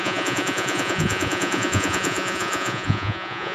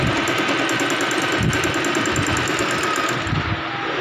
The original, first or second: second